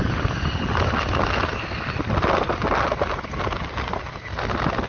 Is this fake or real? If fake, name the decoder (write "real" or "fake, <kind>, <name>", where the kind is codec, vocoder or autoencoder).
real